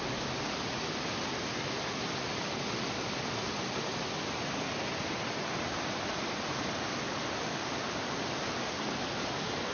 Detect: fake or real real